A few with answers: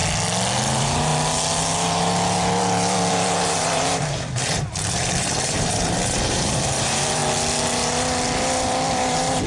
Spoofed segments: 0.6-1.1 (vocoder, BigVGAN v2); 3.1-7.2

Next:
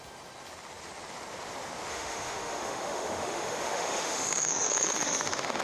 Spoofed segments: 1.9-5.6 (autoencoder, DAC-VAE)

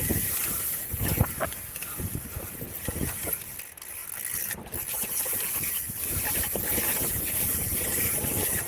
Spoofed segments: none

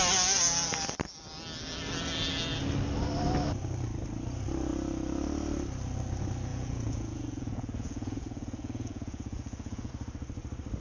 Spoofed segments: 6.5-9.9 (vocoder, Vocos)

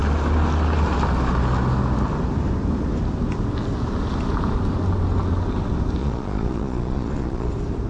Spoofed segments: 6.0-7.5 (vocoder, Vocos)

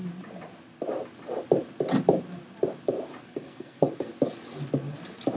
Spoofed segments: 3.2-4.1 (codec, SNAC)

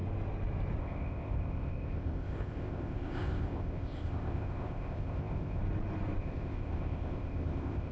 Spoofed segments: 0.8-5.6 (codec, ZipCodec); 6.2-7.9